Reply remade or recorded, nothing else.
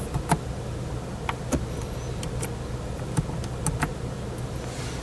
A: recorded